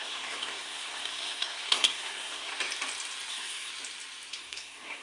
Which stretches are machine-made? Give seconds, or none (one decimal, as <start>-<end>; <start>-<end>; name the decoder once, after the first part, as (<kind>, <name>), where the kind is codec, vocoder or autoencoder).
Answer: 0.0-2.5 (codec, SNAC); 3.3-3.7; 4.3-5.0